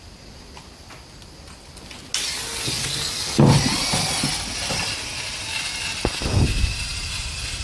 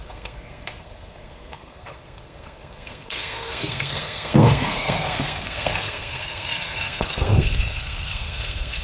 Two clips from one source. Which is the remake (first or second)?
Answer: second